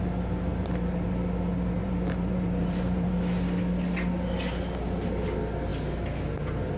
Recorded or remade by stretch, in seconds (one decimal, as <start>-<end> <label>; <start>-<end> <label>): 0.0-0.5 recorded; 0.5-1.1 remade; 1.1-1.8 recorded; 1.8-3.1 remade; 3.1-6.8 recorded